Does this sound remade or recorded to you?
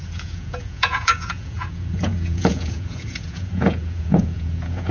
remade